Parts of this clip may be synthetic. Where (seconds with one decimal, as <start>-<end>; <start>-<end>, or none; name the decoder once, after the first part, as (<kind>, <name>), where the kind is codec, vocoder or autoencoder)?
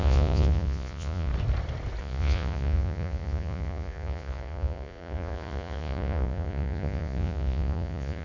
0.0-1.3 (vocoder, Vocos); 2.0-8.2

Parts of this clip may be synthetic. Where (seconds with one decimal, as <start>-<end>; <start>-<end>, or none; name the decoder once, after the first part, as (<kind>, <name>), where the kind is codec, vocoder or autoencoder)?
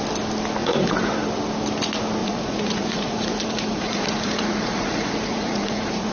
0.6-1.1 (vocoder, Vocos); 2.2-6.1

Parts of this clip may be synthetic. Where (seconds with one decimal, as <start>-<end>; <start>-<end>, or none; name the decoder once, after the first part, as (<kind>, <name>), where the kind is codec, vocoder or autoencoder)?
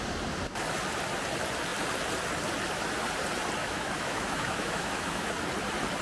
3.6-5.3 (autoencoder, DAC-VAE)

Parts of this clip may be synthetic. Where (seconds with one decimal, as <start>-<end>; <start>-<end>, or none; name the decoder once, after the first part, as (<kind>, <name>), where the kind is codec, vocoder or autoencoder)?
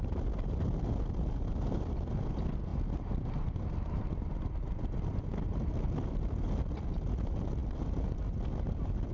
2.7-6.8 (vocoder, BigVGAN v2); 7.6-8.1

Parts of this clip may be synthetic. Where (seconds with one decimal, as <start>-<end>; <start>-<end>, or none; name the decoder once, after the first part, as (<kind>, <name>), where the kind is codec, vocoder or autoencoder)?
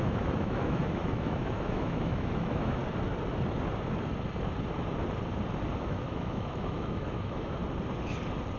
0.0-2.8 (autoencoder, DAC-VAE); 5.8-7.6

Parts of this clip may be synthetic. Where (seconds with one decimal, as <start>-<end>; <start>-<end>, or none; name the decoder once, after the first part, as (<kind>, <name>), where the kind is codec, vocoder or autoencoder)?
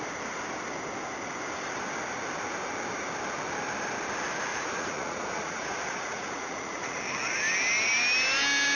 4.5-7.0 (vocoder, Vocos)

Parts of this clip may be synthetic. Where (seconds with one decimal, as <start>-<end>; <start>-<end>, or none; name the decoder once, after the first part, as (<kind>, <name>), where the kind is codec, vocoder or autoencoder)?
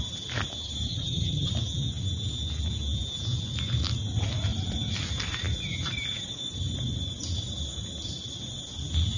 0.9-1.5 (vocoder, HiFi-GAN)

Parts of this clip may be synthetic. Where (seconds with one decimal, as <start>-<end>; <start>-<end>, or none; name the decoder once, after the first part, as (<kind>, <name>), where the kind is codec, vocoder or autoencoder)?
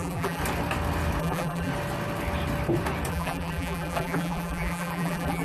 0.0-0.4 (vocoder, BigVGAN v2); 1.2-1.7; 3.1-5.4